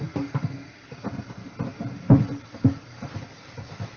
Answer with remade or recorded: recorded